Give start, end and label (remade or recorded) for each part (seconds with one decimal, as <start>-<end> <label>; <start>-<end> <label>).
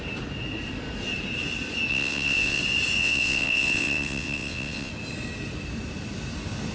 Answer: 0.0-1.9 recorded; 1.9-2.6 remade; 2.6-3.0 recorded; 3.0-4.9 remade; 4.9-6.7 recorded